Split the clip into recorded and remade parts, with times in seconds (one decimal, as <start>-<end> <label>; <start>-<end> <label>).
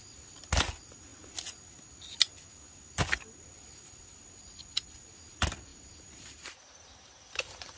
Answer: 0.0-5.7 recorded; 5.7-7.8 remade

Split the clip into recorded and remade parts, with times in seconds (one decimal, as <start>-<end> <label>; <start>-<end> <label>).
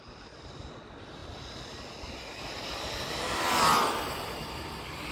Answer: 0.0-1.2 remade; 1.2-3.1 recorded; 3.1-5.1 remade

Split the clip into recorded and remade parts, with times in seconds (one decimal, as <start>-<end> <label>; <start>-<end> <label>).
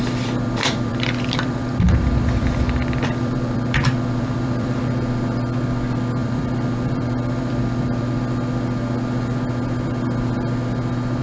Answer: 0.0-4.8 remade; 4.8-6.2 recorded; 6.2-8.0 remade; 8.0-11.2 recorded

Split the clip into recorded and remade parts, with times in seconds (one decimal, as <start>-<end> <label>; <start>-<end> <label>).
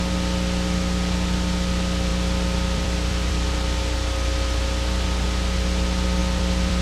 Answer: 0.0-2.1 recorded; 2.1-3.5 remade; 3.5-6.2 recorded; 6.2-6.8 remade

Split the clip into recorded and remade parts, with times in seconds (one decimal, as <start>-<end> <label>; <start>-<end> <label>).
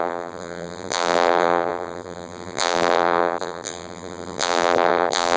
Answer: 0.0-5.4 remade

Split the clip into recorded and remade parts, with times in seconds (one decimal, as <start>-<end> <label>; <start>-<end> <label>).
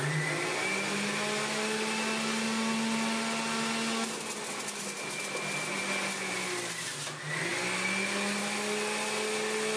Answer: 0.0-9.8 recorded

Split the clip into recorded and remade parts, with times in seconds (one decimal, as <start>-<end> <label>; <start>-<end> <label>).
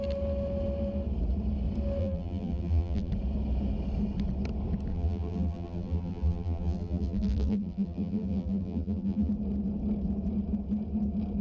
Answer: 0.0-2.0 recorded; 2.0-3.1 remade; 3.1-4.9 recorded; 4.9-9.3 remade; 9.3-11.4 recorded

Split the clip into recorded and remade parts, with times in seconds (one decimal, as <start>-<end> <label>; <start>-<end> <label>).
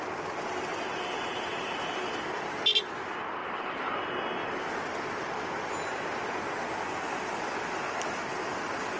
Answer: 0.0-0.7 recorded; 0.7-2.4 remade; 2.4-3.4 recorded; 3.4-3.9 remade; 3.9-9.0 recorded